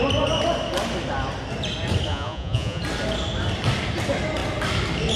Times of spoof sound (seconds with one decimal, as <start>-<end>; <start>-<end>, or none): 2.1-2.8